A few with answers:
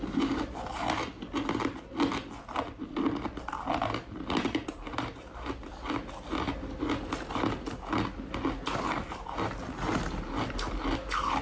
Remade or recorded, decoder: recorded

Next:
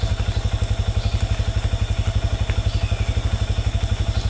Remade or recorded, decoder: recorded